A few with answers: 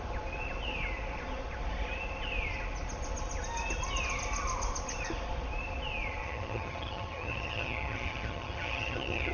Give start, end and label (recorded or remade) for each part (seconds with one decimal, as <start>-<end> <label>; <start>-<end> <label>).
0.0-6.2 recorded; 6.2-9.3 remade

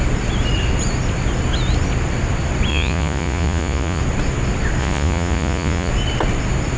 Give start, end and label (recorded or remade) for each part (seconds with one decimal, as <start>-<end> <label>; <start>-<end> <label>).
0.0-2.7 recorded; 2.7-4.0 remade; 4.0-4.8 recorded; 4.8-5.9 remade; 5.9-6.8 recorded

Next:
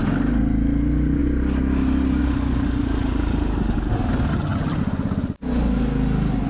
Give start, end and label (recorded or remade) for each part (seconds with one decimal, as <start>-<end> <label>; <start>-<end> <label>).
0.0-4.3 recorded; 4.3-4.8 remade; 4.8-6.5 recorded